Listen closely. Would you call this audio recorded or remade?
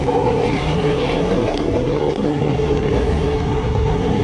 remade